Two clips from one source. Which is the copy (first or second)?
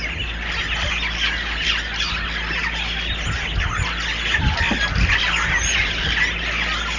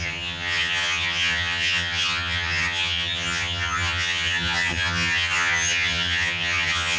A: second